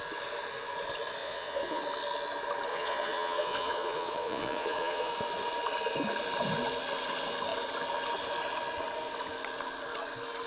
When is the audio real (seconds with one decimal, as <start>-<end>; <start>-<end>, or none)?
0.0-1.2; 1.8-2.7; 5.1-10.5